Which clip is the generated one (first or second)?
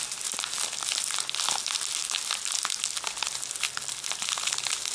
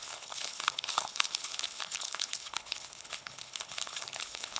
second